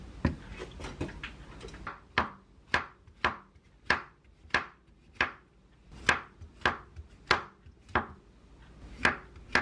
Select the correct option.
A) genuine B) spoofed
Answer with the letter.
A